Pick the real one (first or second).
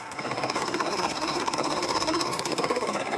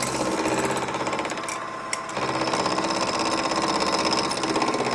second